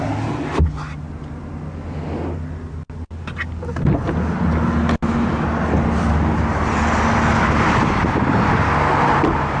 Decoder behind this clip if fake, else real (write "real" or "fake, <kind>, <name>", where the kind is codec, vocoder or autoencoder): real